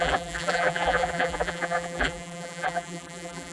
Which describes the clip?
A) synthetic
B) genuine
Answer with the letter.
A